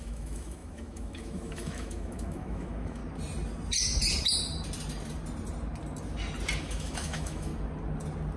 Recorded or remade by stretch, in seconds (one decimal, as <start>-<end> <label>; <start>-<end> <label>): 0.0-3.0 remade; 3.0-6.6 recorded; 6.6-7.5 remade; 7.5-8.4 recorded